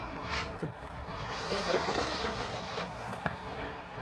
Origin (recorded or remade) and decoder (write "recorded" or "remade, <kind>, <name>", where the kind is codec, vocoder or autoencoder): remade, codec, SNAC